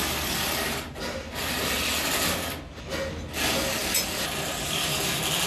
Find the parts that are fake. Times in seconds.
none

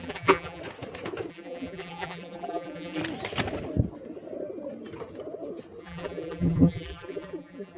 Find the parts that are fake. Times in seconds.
0.0-0.6; 1.3-3.0; 5.8-7.8

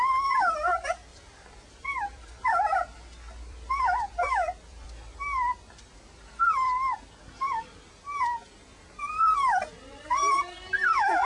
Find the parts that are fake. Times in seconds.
1.1-4.9; 8.7-10.8

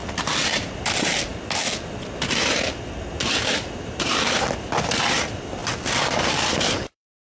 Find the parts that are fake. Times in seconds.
0.0-1.3; 3.4-5.6; 6.1-7.4